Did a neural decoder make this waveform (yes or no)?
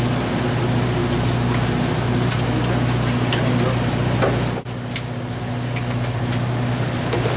no